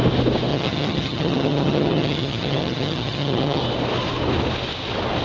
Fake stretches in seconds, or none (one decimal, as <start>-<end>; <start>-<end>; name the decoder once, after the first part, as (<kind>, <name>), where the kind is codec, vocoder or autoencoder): 0.5-3.6 (vocoder, HiFi-GAN)